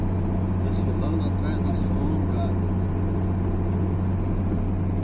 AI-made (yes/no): no